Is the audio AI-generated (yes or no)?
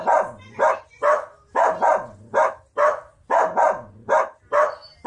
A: no